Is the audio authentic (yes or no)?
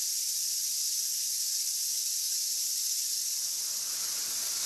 yes